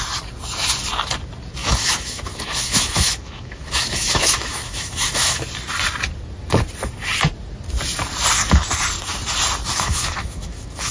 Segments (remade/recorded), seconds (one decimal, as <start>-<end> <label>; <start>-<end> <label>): 0.0-1.6 recorded; 1.6-5.4 remade; 5.4-9.7 recorded; 9.7-10.9 remade